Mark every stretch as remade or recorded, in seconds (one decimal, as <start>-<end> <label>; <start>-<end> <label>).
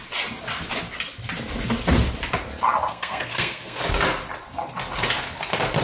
0.0-2.9 recorded; 2.9-3.8 remade; 3.8-5.8 recorded